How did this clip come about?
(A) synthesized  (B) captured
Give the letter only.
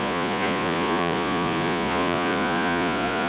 A